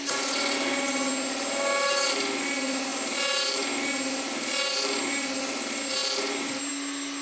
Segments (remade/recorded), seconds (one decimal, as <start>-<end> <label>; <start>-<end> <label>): 0.0-7.2 recorded